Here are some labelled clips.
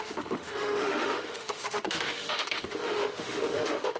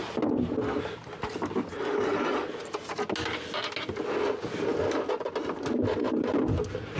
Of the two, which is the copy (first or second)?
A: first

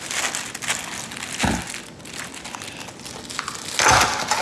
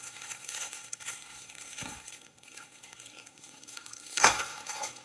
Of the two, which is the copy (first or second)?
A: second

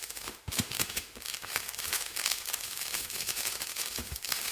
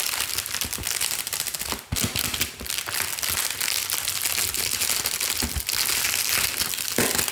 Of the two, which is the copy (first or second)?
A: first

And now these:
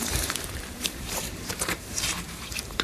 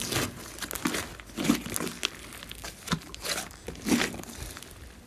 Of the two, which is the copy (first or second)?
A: first